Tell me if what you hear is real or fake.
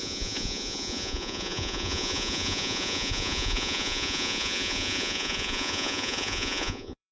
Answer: fake